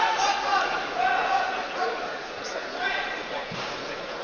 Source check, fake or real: fake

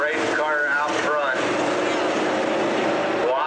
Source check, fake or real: real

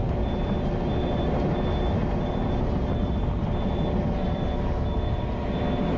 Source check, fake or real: real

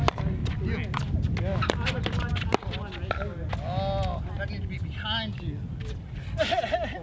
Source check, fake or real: real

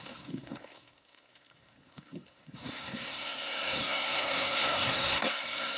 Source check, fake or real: fake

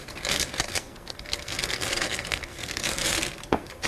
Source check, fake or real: fake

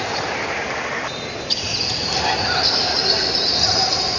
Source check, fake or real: fake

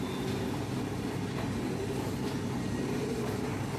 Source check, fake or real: real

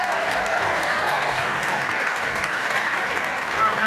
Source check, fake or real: fake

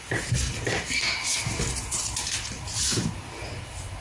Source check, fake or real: real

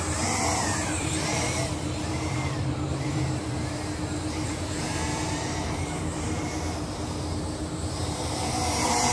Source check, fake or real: fake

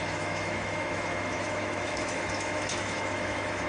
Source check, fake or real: fake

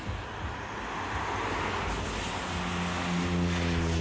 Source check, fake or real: real